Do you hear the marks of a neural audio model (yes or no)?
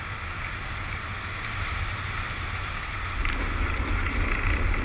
no